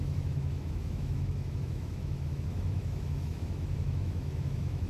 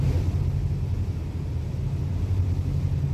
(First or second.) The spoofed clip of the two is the first